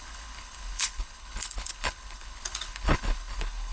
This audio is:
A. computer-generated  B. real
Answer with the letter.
A